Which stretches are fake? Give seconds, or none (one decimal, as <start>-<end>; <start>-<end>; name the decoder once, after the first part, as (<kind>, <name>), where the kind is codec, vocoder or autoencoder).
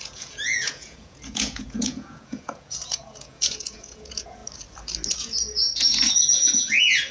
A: 0.0-4.4 (vocoder, Vocos); 5.1-7.1